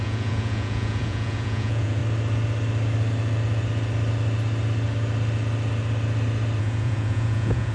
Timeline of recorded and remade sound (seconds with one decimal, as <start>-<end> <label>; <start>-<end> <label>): 0.0-2.0 remade; 2.0-6.6 recorded; 6.6-7.7 remade

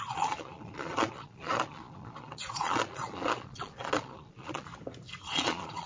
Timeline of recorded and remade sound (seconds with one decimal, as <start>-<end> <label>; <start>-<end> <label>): 0.0-4.7 remade; 4.7-5.2 recorded; 5.2-5.9 remade

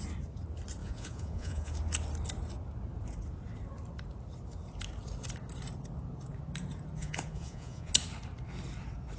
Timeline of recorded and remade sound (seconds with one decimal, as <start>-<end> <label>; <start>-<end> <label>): 0.0-0.8 recorded; 0.8-1.7 remade; 1.7-7.0 recorded; 7.0-7.9 remade; 7.9-9.2 recorded

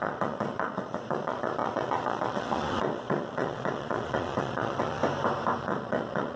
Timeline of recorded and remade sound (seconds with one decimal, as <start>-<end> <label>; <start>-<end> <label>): 0.0-5.0 remade; 5.0-5.6 recorded; 5.6-6.4 remade

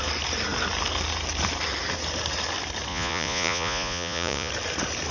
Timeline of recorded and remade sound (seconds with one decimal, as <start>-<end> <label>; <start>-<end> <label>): 0.0-2.9 recorded; 2.9-4.5 remade; 4.5-5.1 recorded

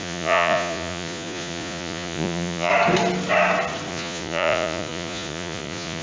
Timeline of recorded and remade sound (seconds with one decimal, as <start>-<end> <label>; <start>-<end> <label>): 0.0-2.7 remade; 2.7-3.9 recorded; 3.9-6.0 remade

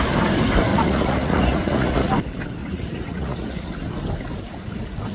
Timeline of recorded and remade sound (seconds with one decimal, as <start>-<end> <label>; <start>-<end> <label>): 0.0-0.7 recorded; 0.7-2.1 remade; 2.1-2.6 recorded; 2.6-3.7 remade; 3.7-5.1 recorded